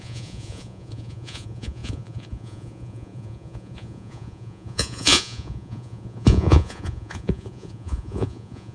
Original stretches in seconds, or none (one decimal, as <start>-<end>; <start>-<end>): none